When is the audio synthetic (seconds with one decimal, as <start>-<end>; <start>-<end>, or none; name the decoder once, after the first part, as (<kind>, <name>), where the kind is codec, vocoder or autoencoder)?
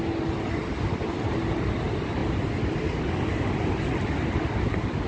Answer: none